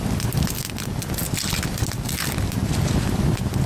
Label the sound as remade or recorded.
recorded